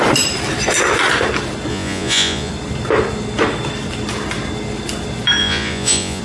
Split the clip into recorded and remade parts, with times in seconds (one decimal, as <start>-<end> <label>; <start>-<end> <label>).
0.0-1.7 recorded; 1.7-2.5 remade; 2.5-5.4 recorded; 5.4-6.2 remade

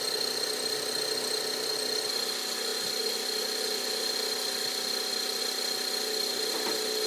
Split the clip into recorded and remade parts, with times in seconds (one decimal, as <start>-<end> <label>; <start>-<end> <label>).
0.0-7.1 recorded

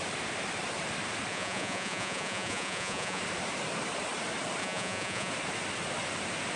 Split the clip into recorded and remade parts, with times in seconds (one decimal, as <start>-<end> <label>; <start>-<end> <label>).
0.0-1.3 recorded; 1.3-3.2 remade; 3.2-4.6 recorded; 4.6-5.3 remade; 5.3-6.6 recorded

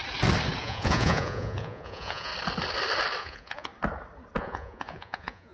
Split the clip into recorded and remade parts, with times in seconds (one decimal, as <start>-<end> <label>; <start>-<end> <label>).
0.0-0.6 recorded; 0.6-2.3 remade; 2.3-3.2 recorded; 3.2-3.7 remade; 3.7-4.4 recorded; 4.4-5.5 remade

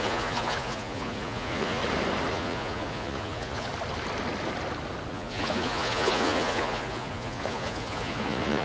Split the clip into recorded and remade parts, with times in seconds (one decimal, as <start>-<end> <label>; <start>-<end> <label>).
0.0-1.8 remade; 1.8-2.3 recorded; 2.3-3.7 remade; 3.7-5.1 recorded; 5.1-8.6 remade

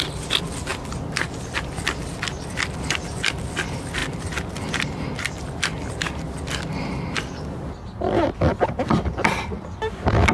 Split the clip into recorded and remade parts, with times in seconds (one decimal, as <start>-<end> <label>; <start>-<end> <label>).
0.0-10.3 recorded

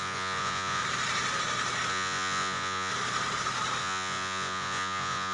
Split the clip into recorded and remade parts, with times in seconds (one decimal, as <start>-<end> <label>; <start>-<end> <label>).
0.0-0.8 remade; 0.8-1.9 recorded; 1.9-2.9 remade; 2.9-3.8 recorded; 3.8-5.3 remade

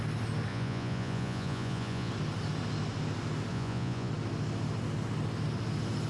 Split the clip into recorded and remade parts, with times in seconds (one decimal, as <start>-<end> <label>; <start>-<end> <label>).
0.0-0.5 recorded; 0.5-2.1 remade; 2.1-3.5 recorded; 3.5-4.1 remade; 4.1-6.1 recorded